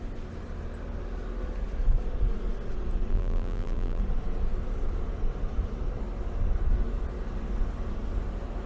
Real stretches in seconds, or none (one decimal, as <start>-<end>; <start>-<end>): 0.0-3.1; 4.0-8.7